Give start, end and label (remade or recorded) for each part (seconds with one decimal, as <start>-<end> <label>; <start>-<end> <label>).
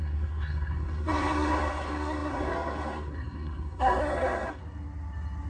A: 0.0-4.6 remade; 4.6-5.5 recorded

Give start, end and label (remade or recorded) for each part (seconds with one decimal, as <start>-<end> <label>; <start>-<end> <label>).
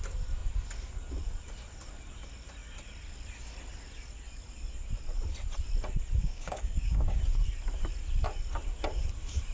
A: 0.0-6.2 recorded; 6.2-7.2 remade; 7.2-9.5 recorded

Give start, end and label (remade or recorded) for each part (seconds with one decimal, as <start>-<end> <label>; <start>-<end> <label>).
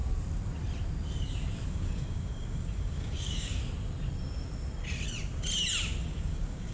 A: 0.0-1.7 recorded; 1.7-3.6 remade; 3.6-6.0 recorded; 6.0-6.7 remade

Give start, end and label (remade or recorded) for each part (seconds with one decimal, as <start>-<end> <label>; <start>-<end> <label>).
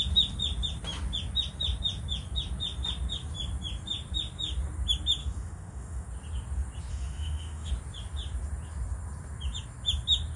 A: 0.0-5.2 recorded; 5.2-6.1 remade; 6.1-6.9 recorded; 6.9-7.7 remade; 7.7-10.4 recorded